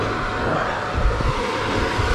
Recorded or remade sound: recorded